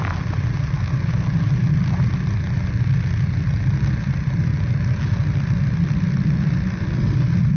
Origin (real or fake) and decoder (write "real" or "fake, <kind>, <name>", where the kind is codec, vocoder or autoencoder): real